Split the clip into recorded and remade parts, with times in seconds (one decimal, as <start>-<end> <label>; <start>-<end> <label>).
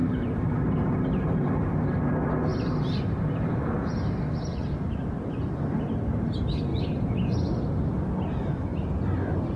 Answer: 0.0-1.5 remade; 1.5-2.5 recorded; 2.5-5.5 remade; 5.5-6.7 recorded; 6.7-7.4 remade; 7.4-9.6 recorded